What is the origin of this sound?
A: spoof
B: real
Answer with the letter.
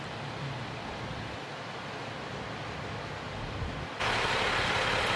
B